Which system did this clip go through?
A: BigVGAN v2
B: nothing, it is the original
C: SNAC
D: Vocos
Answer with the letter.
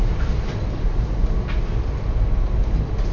B